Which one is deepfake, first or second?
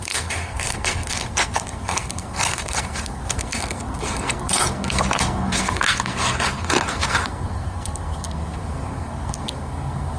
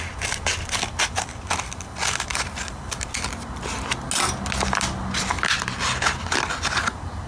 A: first